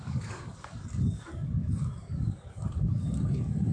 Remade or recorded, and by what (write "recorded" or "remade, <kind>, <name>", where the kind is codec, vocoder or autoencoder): remade, codec, DAC